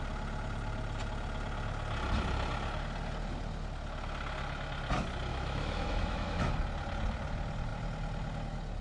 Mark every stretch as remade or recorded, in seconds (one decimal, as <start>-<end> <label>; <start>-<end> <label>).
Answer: 0.0-5.3 recorded; 5.3-6.5 remade; 6.5-8.8 recorded